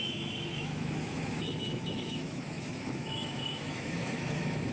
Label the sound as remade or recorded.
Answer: remade